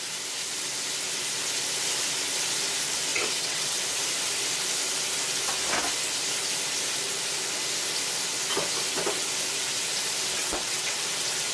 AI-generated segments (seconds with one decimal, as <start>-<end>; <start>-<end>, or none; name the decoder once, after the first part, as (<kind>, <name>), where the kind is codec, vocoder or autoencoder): 3.1-3.8 (vocoder, WaveNeXt); 10.4-11.0